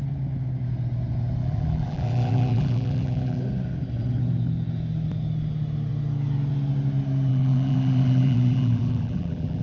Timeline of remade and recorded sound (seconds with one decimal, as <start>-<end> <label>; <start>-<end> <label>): 0.0-1.4 recorded; 1.4-3.4 remade; 3.4-7.3 recorded; 7.3-9.6 remade

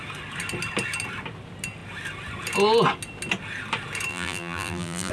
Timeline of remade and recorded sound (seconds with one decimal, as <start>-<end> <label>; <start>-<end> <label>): 0.0-4.1 recorded; 4.1-5.1 remade

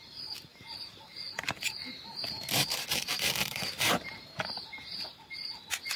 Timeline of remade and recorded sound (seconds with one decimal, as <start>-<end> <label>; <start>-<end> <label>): 0.0-0.5 recorded; 0.5-1.3 remade; 1.3-1.8 recorded; 1.8-2.5 remade; 2.5-3.4 recorded; 3.4-5.3 remade; 5.3-6.0 recorded

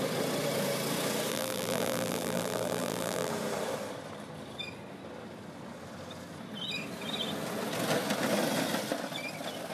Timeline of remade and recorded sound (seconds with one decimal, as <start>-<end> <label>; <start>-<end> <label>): 0.0-1.3 recorded; 1.3-3.3 remade; 3.3-9.7 recorded

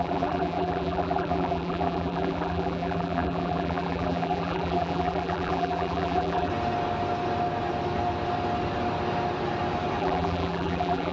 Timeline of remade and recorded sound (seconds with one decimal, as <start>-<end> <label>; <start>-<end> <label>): 0.0-6.5 remade; 6.5-10.0 recorded; 10.0-11.1 remade

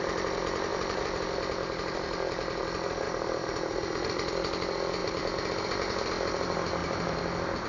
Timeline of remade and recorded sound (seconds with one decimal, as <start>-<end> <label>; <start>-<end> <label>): 0.0-0.7 recorded; 0.7-2.6 remade; 2.6-5.0 recorded; 5.0-6.0 remade; 6.0-7.7 recorded

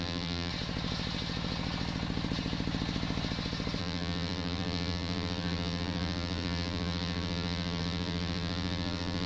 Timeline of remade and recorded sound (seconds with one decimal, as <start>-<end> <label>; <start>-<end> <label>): 0.0-0.5 remade; 0.5-3.8 recorded; 3.8-9.3 remade

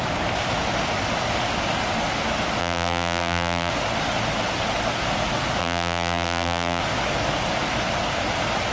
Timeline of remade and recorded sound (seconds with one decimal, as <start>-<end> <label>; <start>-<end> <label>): 0.0-2.6 recorded; 2.6-3.7 remade; 3.7-5.6 recorded; 5.6-6.8 remade; 6.8-8.7 recorded